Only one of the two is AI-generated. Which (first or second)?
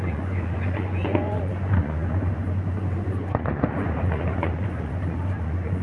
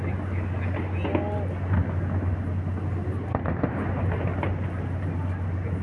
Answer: first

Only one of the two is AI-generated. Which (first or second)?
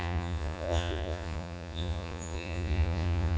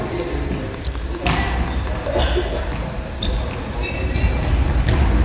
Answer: first